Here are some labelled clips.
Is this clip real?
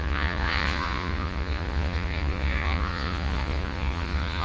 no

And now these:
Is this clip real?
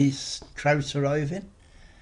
yes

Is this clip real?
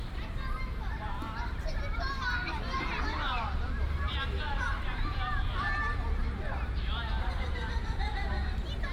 no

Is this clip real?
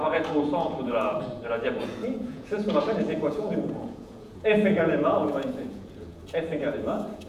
no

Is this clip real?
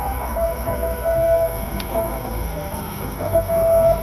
no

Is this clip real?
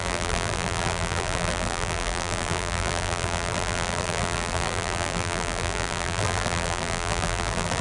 no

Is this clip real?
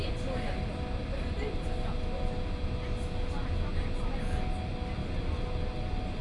yes